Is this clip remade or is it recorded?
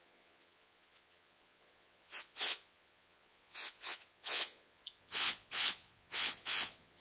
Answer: remade